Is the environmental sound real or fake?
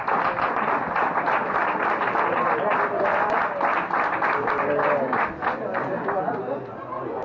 real